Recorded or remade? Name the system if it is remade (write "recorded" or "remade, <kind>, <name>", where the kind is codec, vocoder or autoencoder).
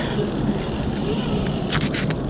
recorded